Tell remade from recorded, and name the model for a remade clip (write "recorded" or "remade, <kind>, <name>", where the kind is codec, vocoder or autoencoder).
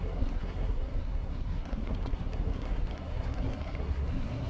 remade, codec, SNAC